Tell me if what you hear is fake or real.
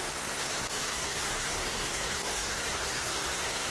fake